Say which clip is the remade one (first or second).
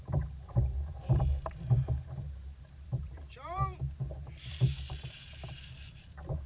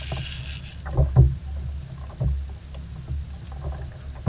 first